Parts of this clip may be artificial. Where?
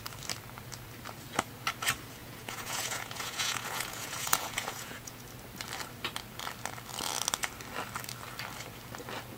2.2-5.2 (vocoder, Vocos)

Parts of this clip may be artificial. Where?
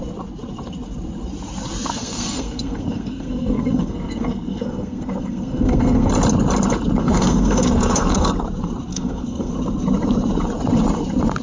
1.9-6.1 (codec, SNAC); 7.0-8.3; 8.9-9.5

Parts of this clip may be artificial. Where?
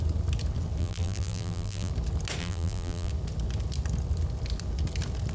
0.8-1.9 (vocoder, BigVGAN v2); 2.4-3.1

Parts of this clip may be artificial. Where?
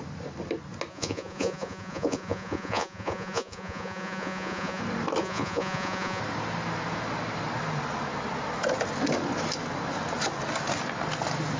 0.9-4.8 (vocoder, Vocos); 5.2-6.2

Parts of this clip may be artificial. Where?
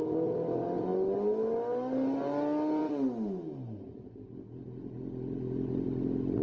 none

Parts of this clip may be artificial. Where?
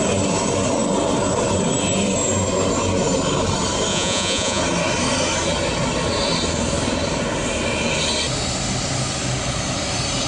3.9-4.6 (vocoder, Vocos)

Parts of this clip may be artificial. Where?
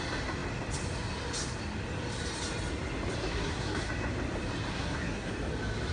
3.3-3.9 (codec, SNAC); 4.7-5.3